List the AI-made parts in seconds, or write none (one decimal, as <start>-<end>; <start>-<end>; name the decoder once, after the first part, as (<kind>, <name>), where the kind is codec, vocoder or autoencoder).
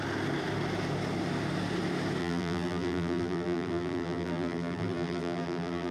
2.2-5.9 (vocoder, BigVGAN v2)